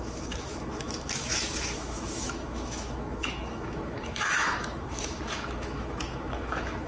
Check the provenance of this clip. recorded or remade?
remade